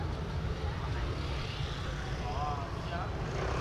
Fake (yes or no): no